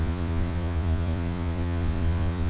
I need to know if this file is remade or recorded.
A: remade